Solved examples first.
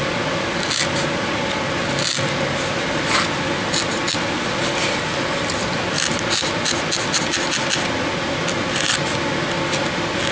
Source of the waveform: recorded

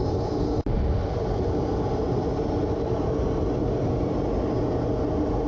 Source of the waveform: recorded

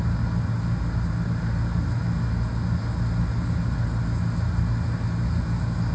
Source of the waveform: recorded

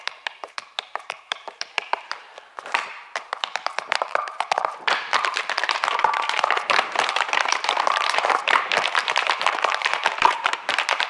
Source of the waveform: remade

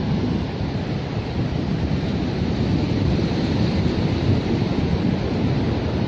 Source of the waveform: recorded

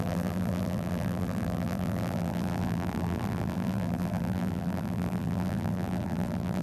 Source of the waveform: remade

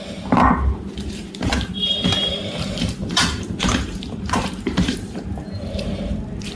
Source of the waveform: remade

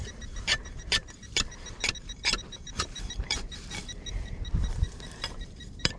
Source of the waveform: remade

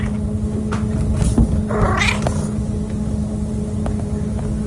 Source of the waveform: recorded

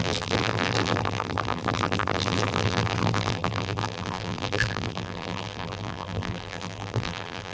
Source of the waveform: remade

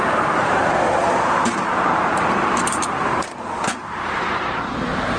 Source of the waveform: remade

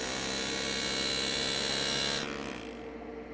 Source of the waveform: recorded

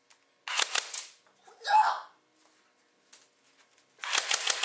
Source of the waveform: recorded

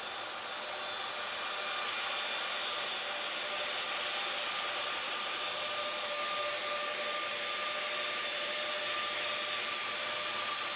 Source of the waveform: recorded